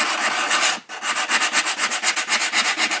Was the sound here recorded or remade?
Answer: recorded